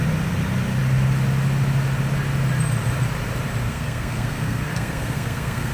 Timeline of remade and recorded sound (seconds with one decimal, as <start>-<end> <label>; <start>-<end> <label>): 0.0-3.7 recorded; 3.7-5.7 remade